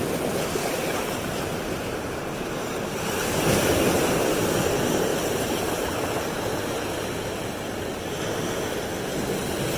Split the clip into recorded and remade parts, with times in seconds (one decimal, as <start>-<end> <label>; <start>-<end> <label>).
0.0-0.8 recorded; 0.8-3.1 remade; 3.1-5.1 recorded; 5.1-8.6 remade; 8.6-9.8 recorded